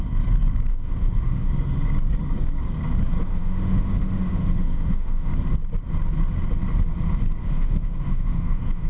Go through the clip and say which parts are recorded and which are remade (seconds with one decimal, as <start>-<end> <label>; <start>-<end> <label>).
0.0-0.7 recorded; 0.7-1.5 remade; 1.5-3.3 recorded; 3.3-5.3 remade; 5.3-7.4 recorded; 7.4-8.9 remade

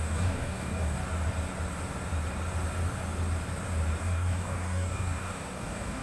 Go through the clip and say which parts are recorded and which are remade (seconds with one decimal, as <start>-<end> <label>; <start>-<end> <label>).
0.0-1.0 remade; 1.0-4.0 recorded; 4.0-6.0 remade

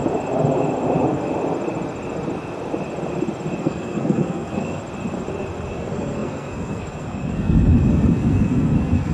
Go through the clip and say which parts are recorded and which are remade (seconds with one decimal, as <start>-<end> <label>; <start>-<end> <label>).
0.0-3.6 recorded; 3.6-4.8 remade; 4.8-5.7 recorded; 5.7-9.1 remade

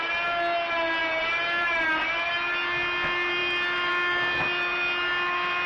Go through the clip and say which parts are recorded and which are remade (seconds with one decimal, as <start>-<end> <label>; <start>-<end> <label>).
0.0-5.7 recorded

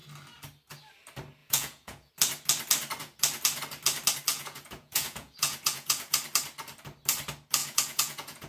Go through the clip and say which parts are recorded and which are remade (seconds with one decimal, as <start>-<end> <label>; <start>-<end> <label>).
0.0-1.4 recorded; 1.4-2.1 remade; 2.1-4.3 recorded; 4.3-6.2 remade; 6.2-7.6 recorded; 7.6-8.5 remade